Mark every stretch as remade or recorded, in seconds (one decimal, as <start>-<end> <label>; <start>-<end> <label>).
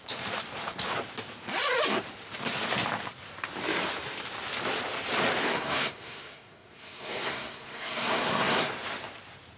0.0-5.4 recorded; 5.4-8.7 remade; 8.7-9.6 recorded